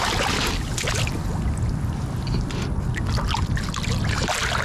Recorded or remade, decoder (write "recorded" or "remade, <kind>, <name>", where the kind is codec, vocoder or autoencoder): recorded